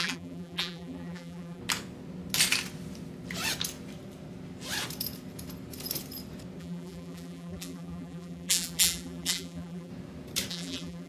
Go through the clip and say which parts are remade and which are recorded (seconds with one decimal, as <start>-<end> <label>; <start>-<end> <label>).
0.0-1.6 remade; 1.6-6.6 recorded; 6.6-9.9 remade; 9.9-10.5 recorded; 10.5-11.1 remade